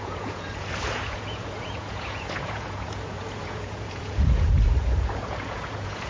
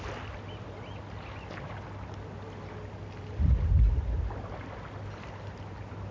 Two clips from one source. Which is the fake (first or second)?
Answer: first